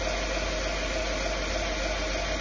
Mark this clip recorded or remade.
recorded